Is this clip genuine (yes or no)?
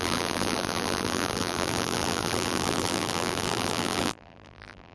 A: no